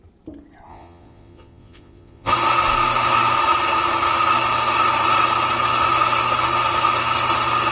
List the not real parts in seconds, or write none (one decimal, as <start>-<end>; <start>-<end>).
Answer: 0.7-2.3